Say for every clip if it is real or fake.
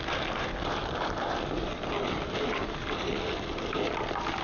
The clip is real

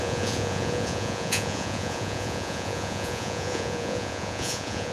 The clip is fake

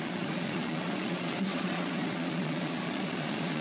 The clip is fake